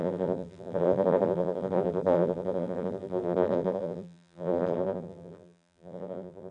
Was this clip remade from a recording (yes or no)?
yes